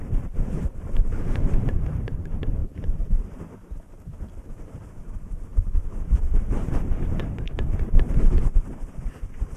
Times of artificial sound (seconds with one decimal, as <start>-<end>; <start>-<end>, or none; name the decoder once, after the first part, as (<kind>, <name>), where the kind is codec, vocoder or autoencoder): 0.0-2.6 (vocoder, BigVGAN v2); 4.8-9.6